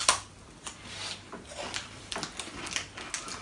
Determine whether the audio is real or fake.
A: real